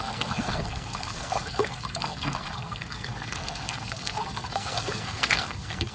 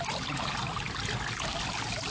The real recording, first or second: second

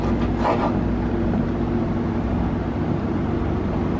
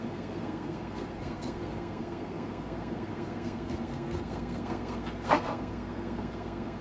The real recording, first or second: first